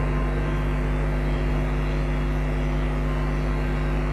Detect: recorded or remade recorded